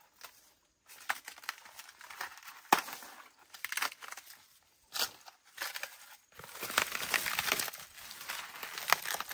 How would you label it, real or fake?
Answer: real